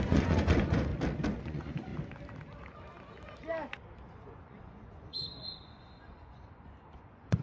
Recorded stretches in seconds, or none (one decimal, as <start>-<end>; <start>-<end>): 0.9-1.4; 1.9-4.1

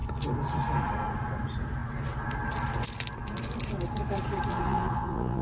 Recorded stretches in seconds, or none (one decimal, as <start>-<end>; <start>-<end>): 0.0-4.5

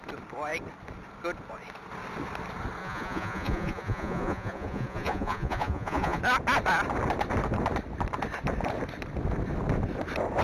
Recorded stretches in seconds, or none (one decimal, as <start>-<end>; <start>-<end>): 0.0-2.8; 6.2-10.4

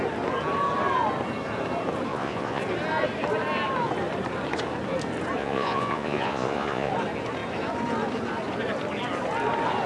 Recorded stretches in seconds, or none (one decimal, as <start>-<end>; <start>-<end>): 0.0-2.1; 2.6-5.4; 6.9-9.9

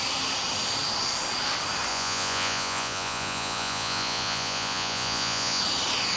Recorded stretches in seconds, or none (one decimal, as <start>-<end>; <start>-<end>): 0.0-1.9; 5.6-6.2

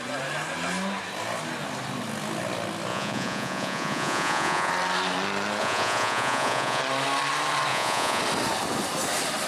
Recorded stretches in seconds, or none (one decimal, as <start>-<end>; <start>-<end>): 0.0-2.9; 4.7-5.6; 6.8-7.7; 8.2-9.5

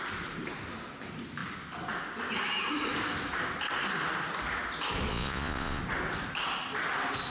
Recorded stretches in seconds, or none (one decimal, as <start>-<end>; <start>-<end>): 0.0-5.1; 5.8-7.3

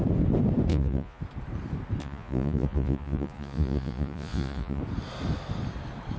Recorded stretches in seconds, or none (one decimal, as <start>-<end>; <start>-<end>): 0.0-0.7; 1.2-2.0; 4.8-6.2